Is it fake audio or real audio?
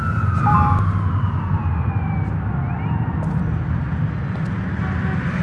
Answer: real